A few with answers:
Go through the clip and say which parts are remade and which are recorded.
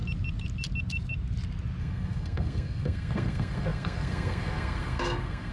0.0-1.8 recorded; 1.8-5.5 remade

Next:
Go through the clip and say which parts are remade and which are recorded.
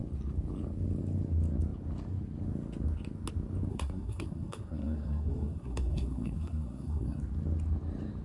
0.0-3.7 recorded; 3.7-7.2 remade; 7.2-8.2 recorded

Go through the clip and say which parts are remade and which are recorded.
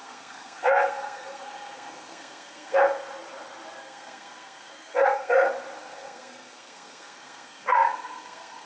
0.0-2.8 remade; 2.8-3.8 recorded; 3.8-5.3 remade; 5.3-5.8 recorded; 5.8-8.7 remade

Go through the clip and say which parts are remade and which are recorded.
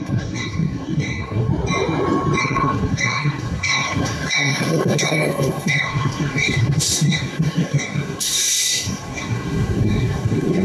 0.0-1.5 remade; 1.5-2.4 recorded; 2.4-10.6 remade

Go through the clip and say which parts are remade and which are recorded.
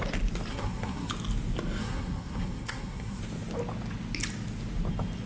0.0-0.5 recorded; 0.5-1.1 remade; 1.1-1.8 recorded; 1.8-3.2 remade; 3.2-5.3 recorded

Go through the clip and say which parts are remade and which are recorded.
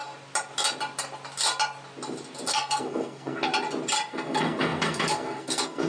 0.0-2.5 recorded; 2.5-3.5 remade; 3.5-4.1 recorded; 4.1-5.9 remade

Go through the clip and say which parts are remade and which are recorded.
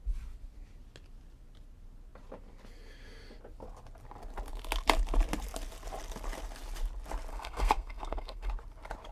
0.0-7.3 recorded; 7.3-8.5 remade; 8.5-9.1 recorded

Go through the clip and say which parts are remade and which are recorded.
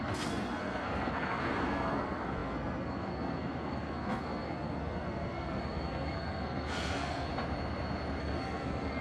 0.0-7.3 remade; 7.3-8.2 recorded; 8.2-9.0 remade